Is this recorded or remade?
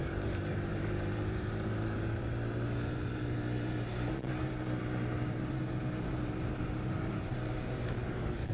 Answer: remade